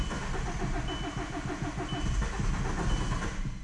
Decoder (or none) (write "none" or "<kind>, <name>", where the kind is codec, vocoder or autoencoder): none